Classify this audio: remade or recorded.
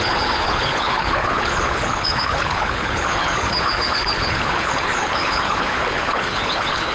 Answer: remade